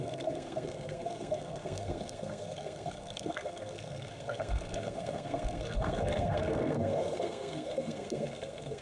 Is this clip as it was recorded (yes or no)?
no